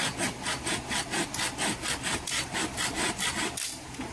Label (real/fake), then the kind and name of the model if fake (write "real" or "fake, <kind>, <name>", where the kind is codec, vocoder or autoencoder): real